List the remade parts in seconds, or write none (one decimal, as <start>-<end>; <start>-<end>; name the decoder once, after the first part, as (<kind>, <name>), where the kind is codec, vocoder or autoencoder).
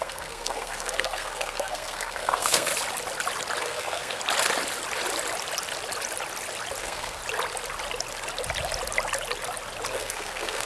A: 0.0-2.7 (codec, SNAC); 3.6-4.2; 6.8-7.2; 9.9-10.7